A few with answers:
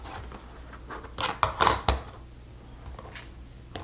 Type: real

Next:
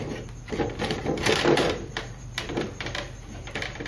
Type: fake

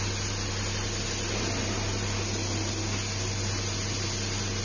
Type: real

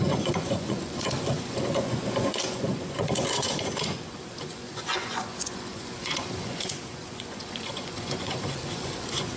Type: fake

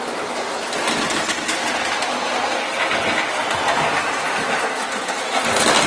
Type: real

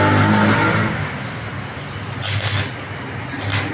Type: real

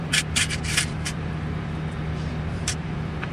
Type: fake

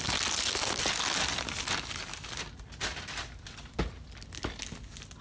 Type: real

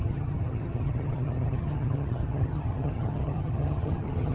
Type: fake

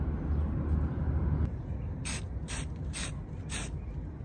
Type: real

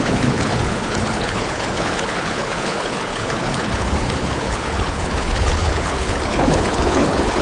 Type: fake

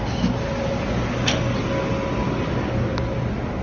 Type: real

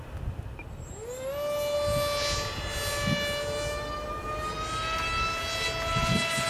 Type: real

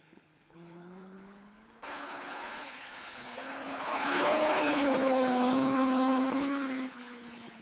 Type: fake